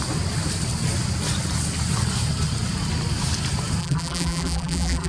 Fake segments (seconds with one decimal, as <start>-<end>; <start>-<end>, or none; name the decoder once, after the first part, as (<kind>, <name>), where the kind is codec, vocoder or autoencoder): 3.8-5.1 (vocoder, BigVGAN v2)

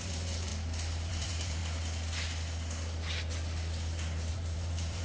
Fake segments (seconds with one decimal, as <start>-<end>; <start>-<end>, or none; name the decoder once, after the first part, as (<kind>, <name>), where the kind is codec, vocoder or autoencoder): 0.0-0.5 (vocoder, BigVGAN v2); 1.1-1.6; 4.3-5.0

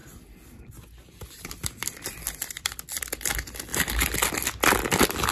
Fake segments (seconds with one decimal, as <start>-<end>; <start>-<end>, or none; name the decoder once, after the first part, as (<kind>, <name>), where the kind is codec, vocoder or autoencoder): 0.0-3.2 (vocoder, BigVGAN v2)

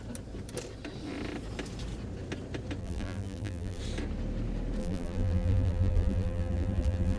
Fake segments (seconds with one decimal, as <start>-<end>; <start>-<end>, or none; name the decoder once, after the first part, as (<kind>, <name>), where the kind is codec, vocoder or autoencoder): 2.8-3.8 (vocoder, BigVGAN v2); 4.8-7.2

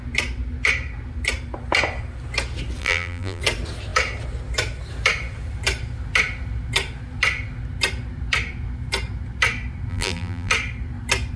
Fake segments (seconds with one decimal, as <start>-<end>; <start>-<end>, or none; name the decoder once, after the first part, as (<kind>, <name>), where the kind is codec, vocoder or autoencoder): 2.8-3.4 (vocoder, BigVGAN v2); 9.9-10.5

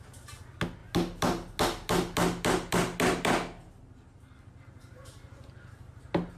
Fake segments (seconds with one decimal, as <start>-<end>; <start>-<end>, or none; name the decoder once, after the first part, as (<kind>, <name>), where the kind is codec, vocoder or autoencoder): none